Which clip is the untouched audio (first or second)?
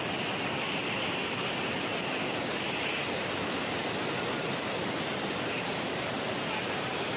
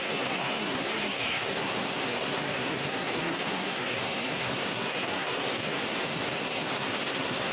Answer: first